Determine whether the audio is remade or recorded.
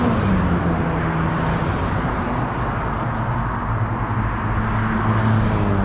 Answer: recorded